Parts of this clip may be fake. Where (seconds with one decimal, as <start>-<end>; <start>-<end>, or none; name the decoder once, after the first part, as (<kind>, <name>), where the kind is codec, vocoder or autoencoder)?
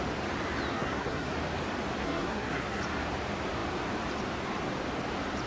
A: 0.7-1.3 (codec, SNAC); 2.0-2.8